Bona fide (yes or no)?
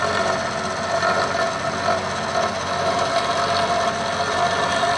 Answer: yes